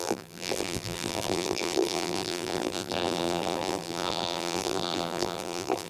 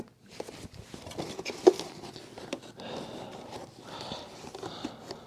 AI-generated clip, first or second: first